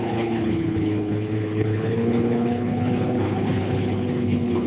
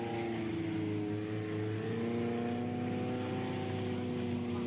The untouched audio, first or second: second